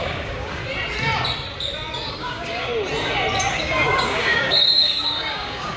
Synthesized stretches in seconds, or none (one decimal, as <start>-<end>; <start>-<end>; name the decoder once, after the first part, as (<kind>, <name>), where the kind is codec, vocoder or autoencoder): 0.0-0.6 (codec, DAC); 2.1-2.7; 3.5-5.8